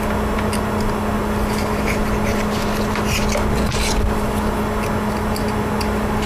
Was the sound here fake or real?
real